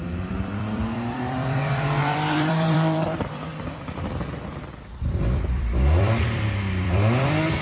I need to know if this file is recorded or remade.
remade